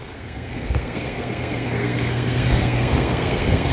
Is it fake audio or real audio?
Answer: fake